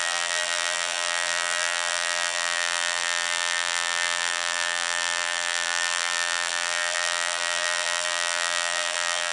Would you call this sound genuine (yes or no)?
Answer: no